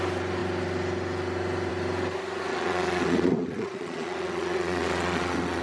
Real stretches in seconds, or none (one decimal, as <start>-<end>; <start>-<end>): 0.0-2.5